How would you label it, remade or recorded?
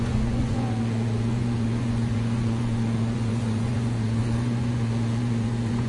remade